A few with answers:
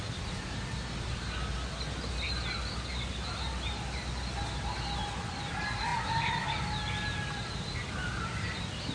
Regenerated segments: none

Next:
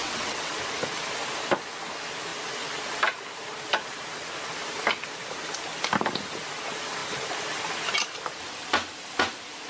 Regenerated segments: 0.0-0.5 (vocoder, WaveNeXt)

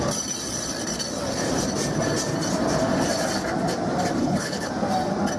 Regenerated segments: 4.2-4.7 (codec, HILCodec)

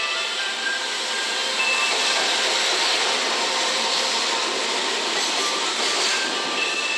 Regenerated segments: none

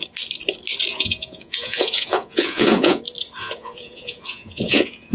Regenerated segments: 0.9-3.0 (vocoder, Vocos); 3.4-5.1

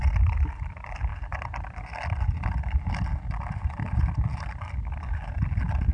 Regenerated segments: none

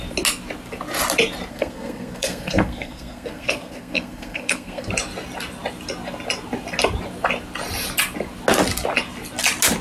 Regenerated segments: 1.5-4.9 (codec, SNAC)

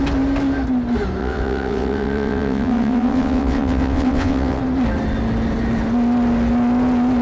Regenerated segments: 1.2-4.6 (vocoder, WaveNeXt)